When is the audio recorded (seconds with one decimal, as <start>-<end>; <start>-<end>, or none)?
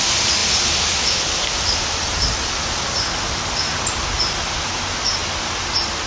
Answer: 0.0-6.1